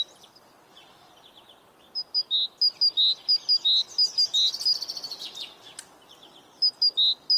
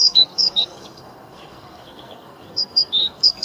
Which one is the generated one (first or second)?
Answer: second